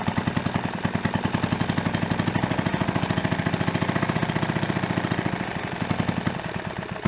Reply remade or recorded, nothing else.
recorded